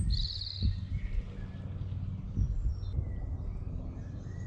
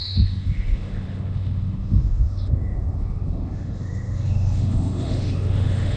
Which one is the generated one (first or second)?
second